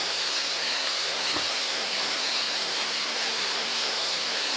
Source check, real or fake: fake